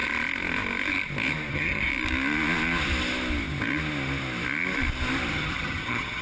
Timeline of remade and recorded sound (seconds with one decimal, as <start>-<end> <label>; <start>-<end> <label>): 0.0-1.5 recorded; 1.5-1.9 remade; 1.9-5.3 recorded; 5.3-6.2 remade